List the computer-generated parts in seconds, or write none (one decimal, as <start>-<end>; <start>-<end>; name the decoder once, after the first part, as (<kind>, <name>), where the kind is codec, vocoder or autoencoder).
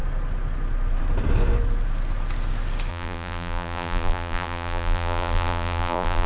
2.9-6.3 (vocoder, BigVGAN v2)